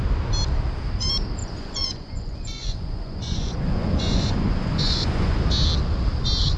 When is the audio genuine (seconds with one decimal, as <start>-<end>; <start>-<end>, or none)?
0.0-1.4; 5.4-6.6